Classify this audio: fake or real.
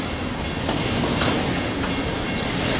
real